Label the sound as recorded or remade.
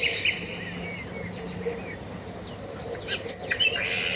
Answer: recorded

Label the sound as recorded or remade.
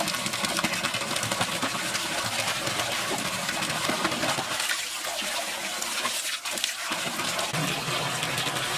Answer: recorded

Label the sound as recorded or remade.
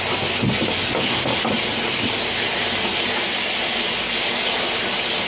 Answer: recorded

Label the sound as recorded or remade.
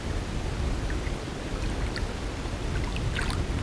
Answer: recorded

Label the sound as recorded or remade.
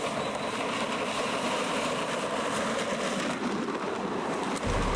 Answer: recorded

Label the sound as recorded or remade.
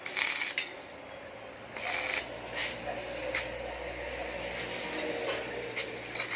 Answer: recorded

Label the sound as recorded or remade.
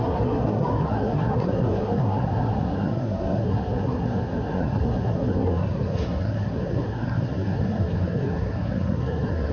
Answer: remade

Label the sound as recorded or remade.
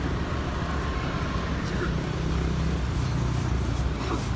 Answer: recorded